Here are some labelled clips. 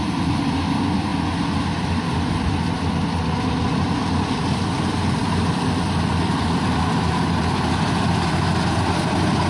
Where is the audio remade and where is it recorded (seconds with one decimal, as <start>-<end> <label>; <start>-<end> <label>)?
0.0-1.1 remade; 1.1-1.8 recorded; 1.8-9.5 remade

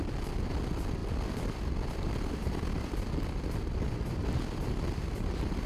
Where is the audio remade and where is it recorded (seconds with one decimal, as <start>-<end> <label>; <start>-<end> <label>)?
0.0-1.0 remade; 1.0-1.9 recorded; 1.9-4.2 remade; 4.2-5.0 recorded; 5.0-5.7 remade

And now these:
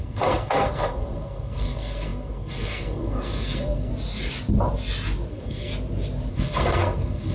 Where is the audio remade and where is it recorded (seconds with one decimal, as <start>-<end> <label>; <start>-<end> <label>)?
0.0-3.9 remade; 3.9-5.3 recorded; 5.3-5.7 remade; 5.7-6.3 recorded; 6.3-7.3 remade

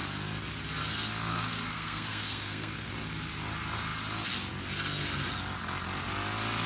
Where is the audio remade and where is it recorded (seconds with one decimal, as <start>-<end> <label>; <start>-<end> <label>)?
0.0-1.3 recorded; 1.3-2.9 remade; 2.9-6.7 recorded

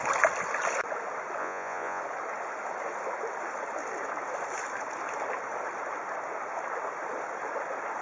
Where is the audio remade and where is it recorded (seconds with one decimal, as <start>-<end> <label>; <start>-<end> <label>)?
0.0-1.4 recorded; 1.4-2.0 remade; 2.0-8.0 recorded

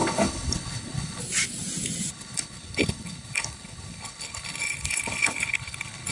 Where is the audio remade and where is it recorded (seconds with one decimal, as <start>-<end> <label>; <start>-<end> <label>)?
0.0-1.2 remade; 1.2-2.1 recorded; 2.1-6.1 remade